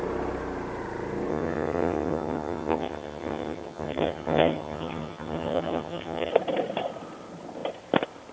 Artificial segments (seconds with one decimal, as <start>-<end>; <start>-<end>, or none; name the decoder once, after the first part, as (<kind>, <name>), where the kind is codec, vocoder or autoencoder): 1.3-6.3 (vocoder, HiFi-GAN)